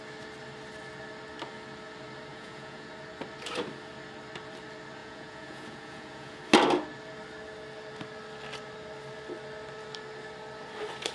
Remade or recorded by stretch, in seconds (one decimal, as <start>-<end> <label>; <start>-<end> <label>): 0.0-2.3 recorded; 2.3-2.9 remade; 2.9-5.0 recorded; 5.0-6.4 remade; 6.4-11.1 recorded